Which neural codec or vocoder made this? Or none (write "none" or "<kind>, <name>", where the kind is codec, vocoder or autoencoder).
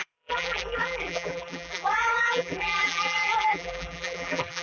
vocoder, BigVGAN v2